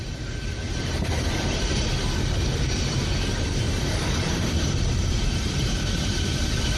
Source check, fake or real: fake